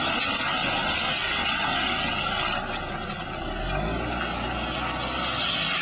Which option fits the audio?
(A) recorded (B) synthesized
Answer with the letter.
A